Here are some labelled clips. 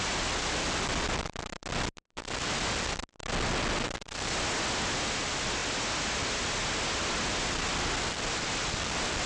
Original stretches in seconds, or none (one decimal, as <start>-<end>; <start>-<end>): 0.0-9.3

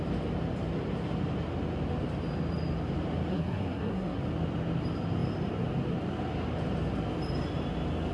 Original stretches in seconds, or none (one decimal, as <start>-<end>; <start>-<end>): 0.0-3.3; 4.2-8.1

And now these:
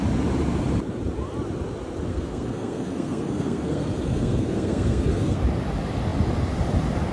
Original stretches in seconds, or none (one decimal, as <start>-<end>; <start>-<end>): 0.0-2.1; 5.4-7.1

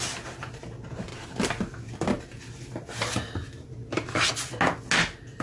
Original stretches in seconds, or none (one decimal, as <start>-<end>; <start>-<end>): 0.0-5.4